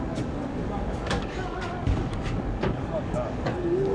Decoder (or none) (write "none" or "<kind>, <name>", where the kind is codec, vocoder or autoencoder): codec, DAC